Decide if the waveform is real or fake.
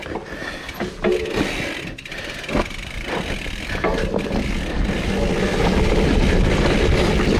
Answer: real